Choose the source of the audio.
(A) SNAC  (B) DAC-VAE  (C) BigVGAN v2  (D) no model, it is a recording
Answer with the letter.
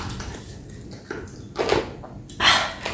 D